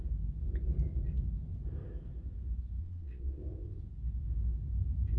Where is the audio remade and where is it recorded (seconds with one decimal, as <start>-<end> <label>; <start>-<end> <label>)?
0.0-2.8 recorded; 2.8-3.4 remade; 3.4-5.2 recorded